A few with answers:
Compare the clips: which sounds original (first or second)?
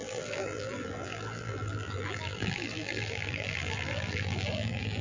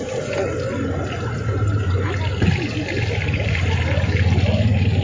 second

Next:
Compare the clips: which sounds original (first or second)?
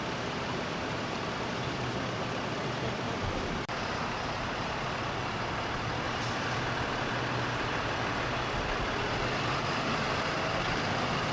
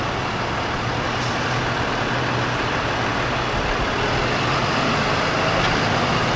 second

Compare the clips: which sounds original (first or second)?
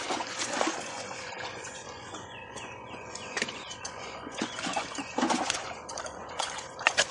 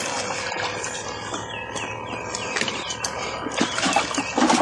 second